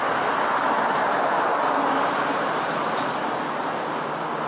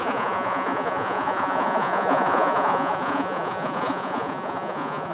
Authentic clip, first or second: first